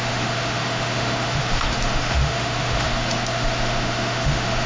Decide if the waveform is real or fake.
fake